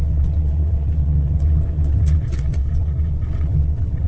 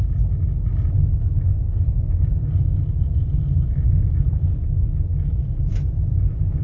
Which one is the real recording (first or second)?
second